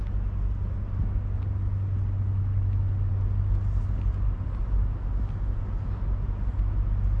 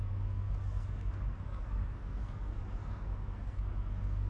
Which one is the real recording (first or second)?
first